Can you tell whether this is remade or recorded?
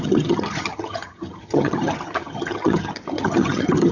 remade